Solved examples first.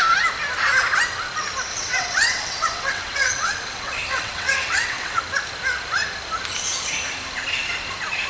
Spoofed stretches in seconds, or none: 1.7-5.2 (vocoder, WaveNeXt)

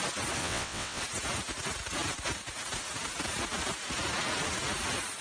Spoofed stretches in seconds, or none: 0.4-1.0 (vocoder, WaveNeXt)